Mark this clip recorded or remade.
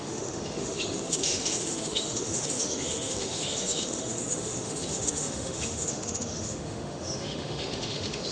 remade